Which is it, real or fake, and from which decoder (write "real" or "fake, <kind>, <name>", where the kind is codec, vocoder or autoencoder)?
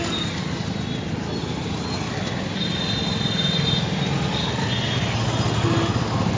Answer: real